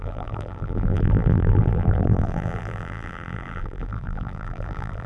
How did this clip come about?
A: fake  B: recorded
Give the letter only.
A